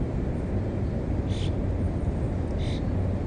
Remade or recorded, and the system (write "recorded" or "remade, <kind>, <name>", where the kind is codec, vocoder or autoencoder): recorded